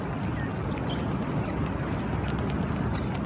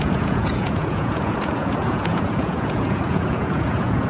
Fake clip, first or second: second